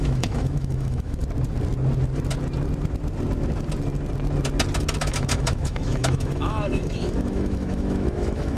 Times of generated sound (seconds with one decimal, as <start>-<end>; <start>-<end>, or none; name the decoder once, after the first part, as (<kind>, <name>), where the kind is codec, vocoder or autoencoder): 0.0-1.2 (autoencoder, DAC-VAE); 5.0-8.6